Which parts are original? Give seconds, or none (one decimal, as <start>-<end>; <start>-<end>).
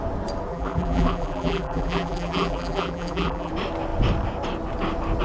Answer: 0.0-0.5; 3.5-5.2